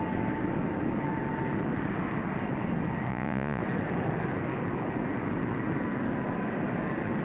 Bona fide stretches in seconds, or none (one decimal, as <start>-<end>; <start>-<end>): 0.0-3.1; 3.6-7.2